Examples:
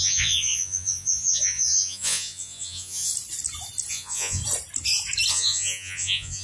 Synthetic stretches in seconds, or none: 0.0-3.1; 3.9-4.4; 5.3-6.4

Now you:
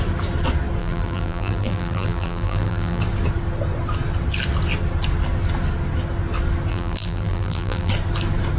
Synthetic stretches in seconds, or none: 0.8-3.0; 6.7-7.9

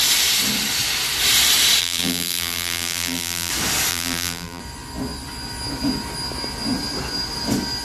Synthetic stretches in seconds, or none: 1.8-3.5; 3.9-4.6

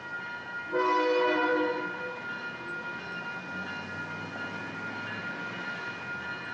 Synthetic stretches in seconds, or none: none

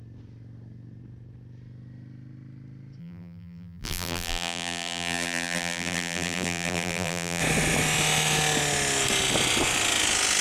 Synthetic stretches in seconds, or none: 3.0-7.4

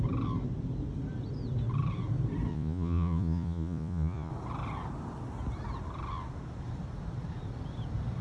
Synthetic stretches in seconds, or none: 2.5-4.3

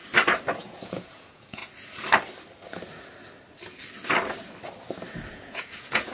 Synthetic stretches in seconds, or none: 0.6-1.6; 5.3-6.1